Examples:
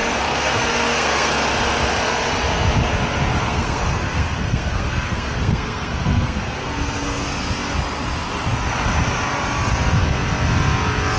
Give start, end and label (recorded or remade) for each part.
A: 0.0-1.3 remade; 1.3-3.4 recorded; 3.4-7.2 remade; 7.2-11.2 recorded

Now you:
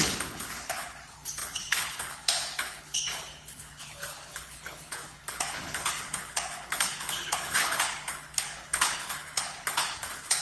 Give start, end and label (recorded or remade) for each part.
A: 0.0-10.4 remade

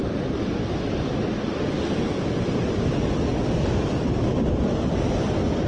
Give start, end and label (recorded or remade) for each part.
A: 0.0-3.3 recorded; 3.3-4.3 remade; 4.3-5.7 recorded

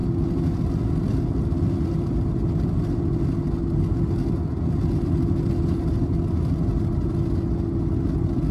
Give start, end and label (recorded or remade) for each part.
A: 0.0-8.5 recorded

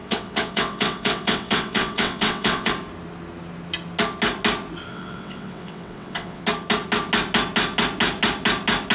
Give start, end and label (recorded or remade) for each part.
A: 0.0-2.7 remade; 2.7-4.9 recorded; 4.9-6.4 remade; 6.4-8.9 recorded